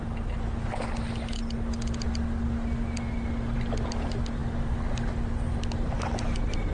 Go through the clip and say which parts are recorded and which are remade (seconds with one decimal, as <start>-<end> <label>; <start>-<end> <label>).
0.0-6.7 recorded